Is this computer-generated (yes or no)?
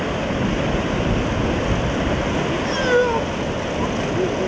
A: no